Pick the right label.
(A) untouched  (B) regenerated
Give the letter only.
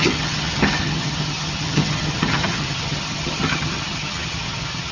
B